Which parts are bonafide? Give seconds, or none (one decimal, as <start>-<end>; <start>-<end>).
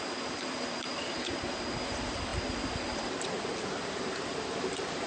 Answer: 0.0-5.1